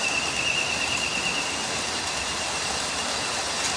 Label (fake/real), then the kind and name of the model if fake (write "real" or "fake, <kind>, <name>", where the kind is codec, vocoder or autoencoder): real